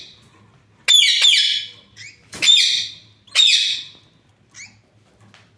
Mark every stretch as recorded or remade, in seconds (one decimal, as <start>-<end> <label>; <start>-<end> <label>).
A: 0.0-5.6 recorded